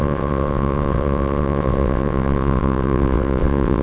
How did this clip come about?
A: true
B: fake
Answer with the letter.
B